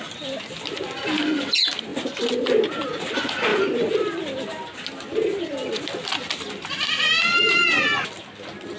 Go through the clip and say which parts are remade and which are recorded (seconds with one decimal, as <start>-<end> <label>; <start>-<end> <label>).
0.0-8.8 recorded